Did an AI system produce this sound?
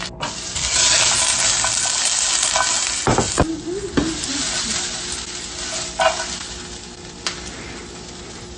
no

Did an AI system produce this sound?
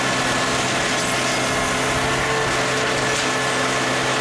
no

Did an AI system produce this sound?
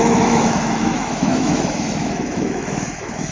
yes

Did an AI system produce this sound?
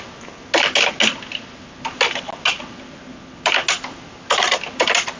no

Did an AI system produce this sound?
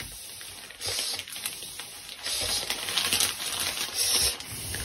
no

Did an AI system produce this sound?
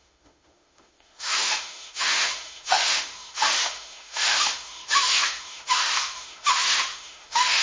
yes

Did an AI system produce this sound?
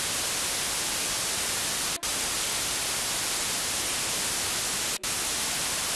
no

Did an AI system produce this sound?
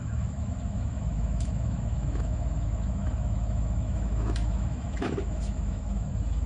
yes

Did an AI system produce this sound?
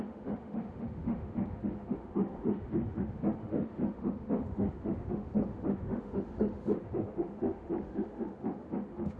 yes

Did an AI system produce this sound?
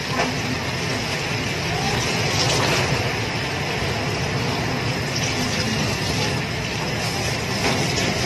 no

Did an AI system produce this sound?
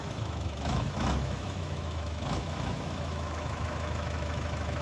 yes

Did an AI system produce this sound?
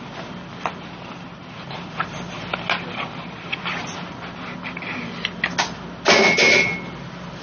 no